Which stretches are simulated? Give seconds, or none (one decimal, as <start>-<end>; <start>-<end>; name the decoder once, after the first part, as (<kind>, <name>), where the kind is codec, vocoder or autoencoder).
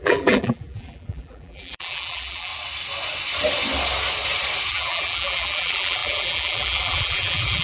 0.0-2.5 (vocoder, BigVGAN v2); 4.7-7.6